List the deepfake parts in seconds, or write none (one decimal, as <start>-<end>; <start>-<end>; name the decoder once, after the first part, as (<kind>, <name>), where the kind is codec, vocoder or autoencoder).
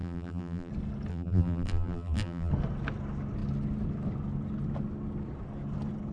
0.0-0.7 (vocoder, BigVGAN v2); 1.1-2.5